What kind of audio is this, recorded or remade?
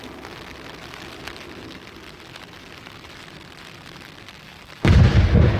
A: recorded